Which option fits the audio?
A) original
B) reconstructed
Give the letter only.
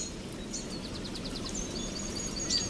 A